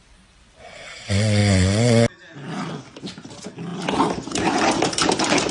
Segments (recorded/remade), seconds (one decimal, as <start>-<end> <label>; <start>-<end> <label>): 0.0-5.5 recorded